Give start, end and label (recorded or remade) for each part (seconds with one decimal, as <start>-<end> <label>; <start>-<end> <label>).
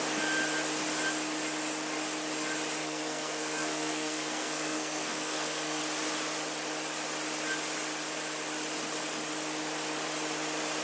0.0-2.8 recorded; 2.8-5.8 remade; 5.8-10.8 recorded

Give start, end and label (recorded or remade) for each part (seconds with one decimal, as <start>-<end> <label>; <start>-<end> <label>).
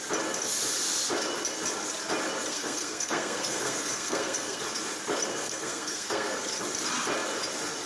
0.0-2.5 recorded; 2.5-4.6 remade; 4.6-5.3 recorded; 5.3-6.4 remade; 6.4-7.9 recorded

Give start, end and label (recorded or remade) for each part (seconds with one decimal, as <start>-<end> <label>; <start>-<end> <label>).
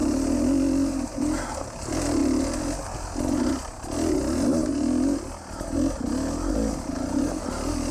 0.0-1.4 remade; 1.4-7.9 recorded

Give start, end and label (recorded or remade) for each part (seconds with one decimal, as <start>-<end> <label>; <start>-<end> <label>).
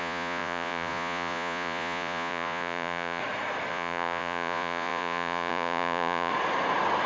0.0-3.2 remade; 3.2-3.7 recorded; 3.7-6.3 remade; 6.3-7.1 recorded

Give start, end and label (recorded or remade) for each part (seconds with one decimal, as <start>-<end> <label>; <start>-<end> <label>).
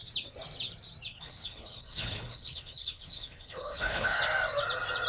0.0-1.1 recorded; 1.1-4.2 remade; 4.2-5.1 recorded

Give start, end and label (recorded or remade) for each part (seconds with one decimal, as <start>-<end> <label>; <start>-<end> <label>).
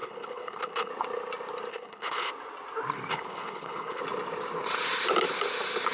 0.0-0.9 remade; 0.9-1.7 recorded; 1.7-2.3 remade; 2.3-3.1 recorded; 3.1-4.0 remade; 4.0-5.9 recorded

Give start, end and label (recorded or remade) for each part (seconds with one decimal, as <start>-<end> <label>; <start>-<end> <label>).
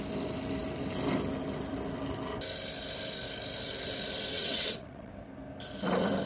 0.0-4.3 recorded; 4.3-5.1 remade; 5.1-6.3 recorded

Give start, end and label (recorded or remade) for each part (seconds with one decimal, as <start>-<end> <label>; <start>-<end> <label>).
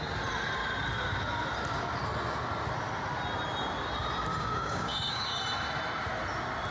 0.0-4.3 recorded; 4.3-5.4 remade; 5.4-6.7 recorded